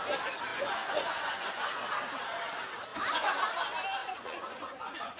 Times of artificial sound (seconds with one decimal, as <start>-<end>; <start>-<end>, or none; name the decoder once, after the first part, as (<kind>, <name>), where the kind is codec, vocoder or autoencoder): 0.5-1.7 (vocoder, Vocos); 2.9-3.4; 4.0-5.2